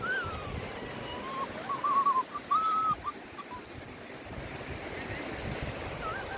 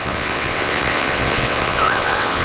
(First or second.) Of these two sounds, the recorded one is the first